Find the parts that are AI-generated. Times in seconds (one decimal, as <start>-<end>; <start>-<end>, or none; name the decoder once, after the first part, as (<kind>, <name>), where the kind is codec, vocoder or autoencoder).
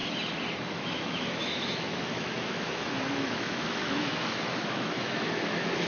0.7-5.9 (autoencoder, DAC-VAE)